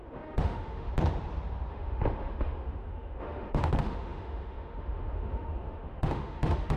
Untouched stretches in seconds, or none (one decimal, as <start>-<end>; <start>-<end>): 0.9-1.7